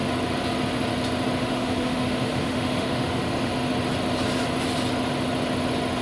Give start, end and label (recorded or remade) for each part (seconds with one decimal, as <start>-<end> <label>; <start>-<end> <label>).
0.0-1.4 recorded; 1.4-3.5 remade; 3.5-6.0 recorded